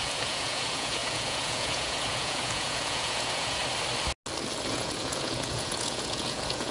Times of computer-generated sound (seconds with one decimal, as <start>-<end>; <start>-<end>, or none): 0.0-3.6; 4.7-6.7